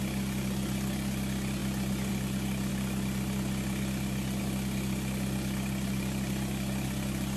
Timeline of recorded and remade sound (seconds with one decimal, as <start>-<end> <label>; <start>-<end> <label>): 0.0-7.4 recorded